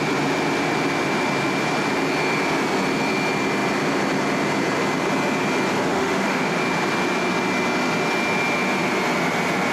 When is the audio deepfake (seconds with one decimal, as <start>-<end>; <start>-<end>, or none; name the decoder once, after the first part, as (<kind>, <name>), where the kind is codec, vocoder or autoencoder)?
5.9-6.6 (autoencoder, DAC-VAE)